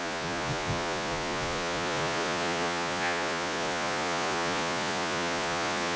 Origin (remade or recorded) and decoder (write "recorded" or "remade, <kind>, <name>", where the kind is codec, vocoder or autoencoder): remade, vocoder, Vocos